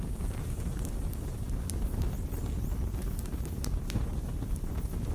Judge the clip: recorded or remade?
remade